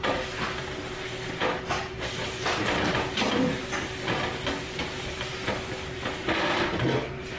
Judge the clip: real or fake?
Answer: real